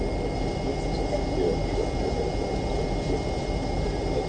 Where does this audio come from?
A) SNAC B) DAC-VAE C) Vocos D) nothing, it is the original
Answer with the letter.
D